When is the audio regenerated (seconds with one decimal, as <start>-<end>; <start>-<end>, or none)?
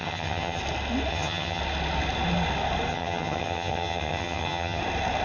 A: 0.0-0.6; 1.1-1.6; 2.9-4.8